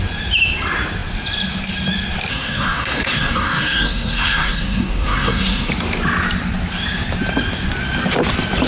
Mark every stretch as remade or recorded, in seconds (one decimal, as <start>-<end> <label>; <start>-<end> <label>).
0.0-2.3 recorded; 2.3-5.7 remade; 5.7-8.7 recorded